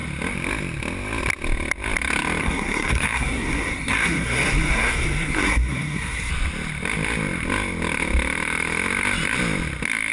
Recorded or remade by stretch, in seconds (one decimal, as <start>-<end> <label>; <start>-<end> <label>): 0.0-2.4 recorded; 2.4-6.3 remade; 6.3-10.1 recorded